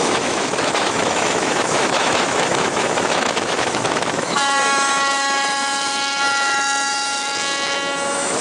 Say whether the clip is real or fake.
fake